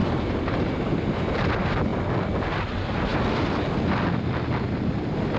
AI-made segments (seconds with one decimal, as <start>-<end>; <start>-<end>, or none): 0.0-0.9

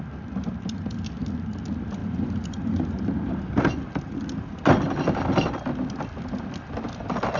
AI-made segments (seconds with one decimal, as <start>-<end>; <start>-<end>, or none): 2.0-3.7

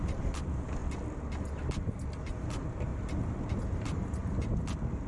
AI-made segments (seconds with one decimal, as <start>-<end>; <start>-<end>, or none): 0.0-0.8; 2.4-2.9; 3.6-4.2

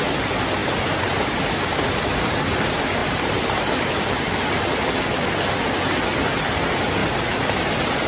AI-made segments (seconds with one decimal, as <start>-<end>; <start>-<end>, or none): 3.0-4.6; 7.0-8.1

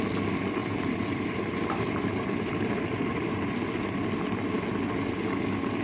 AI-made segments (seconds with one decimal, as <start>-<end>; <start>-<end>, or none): 0.6-3.6

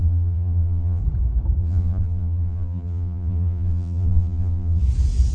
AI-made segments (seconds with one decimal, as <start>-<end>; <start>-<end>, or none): 0.0-1.0; 1.6-4.8